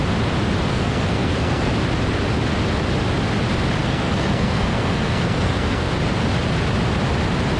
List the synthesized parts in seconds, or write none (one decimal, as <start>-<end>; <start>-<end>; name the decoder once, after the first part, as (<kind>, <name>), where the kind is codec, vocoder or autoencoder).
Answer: 0.7-1.7 (codec, SNAC); 3.8-5.9